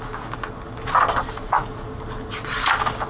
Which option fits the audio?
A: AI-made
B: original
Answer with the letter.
B